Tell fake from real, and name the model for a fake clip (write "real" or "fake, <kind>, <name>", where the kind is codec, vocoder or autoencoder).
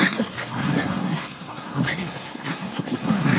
fake, codec, SNAC